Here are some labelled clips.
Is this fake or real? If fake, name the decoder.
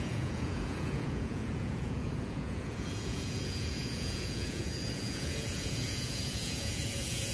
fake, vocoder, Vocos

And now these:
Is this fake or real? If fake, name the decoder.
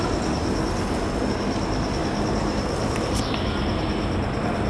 real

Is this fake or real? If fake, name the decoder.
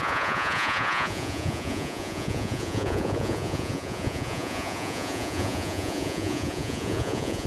fake, vocoder, Vocos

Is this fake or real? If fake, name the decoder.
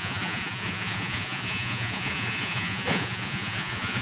fake, vocoder, Vocos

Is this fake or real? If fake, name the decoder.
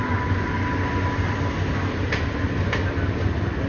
real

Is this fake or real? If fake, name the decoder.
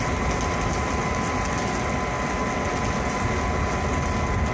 real